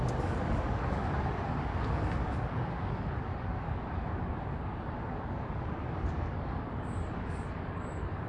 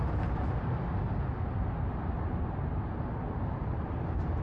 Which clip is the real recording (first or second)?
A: second